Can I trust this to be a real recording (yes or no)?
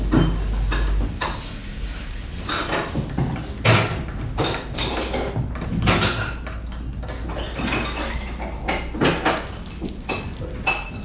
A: yes